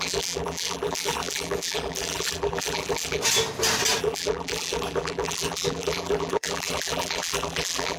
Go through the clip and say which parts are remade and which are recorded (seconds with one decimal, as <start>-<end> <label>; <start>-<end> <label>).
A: 0.0-3.2 remade; 3.2-4.0 recorded; 4.0-8.0 remade

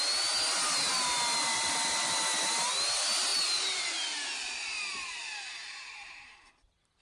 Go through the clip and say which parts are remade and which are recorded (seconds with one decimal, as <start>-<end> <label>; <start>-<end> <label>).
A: 0.0-3.3 recorded; 3.3-6.5 remade; 6.5-7.0 recorded

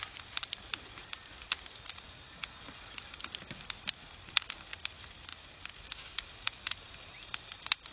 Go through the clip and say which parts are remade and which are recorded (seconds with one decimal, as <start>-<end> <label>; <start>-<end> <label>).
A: 0.0-7.9 remade

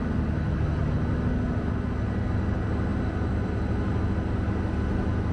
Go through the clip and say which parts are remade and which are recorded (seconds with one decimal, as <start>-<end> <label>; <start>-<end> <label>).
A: 0.0-2.9 recorded; 2.9-3.4 remade; 3.4-5.3 recorded

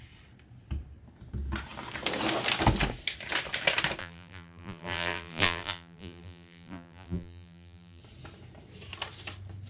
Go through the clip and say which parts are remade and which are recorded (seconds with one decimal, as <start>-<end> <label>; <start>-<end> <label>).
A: 0.0-4.0 recorded; 4.0-8.0 remade; 8.0-9.7 recorded

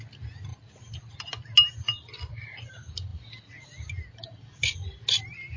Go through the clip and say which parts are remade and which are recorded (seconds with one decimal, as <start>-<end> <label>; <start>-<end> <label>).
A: 0.0-0.5 remade; 0.5-1.7 recorded; 1.7-3.1 remade; 3.1-3.9 recorded; 3.9-5.6 remade

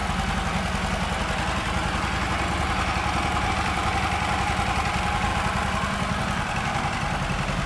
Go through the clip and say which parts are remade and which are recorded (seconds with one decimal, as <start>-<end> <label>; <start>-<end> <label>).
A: 0.0-3.5 recorded; 3.5-7.7 remade

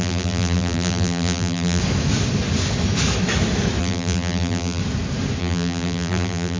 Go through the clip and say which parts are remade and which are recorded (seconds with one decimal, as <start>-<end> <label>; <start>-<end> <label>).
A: 0.0-1.8 remade; 1.8-3.8 recorded; 3.8-4.8 remade; 4.8-5.4 recorded; 5.4-6.6 remade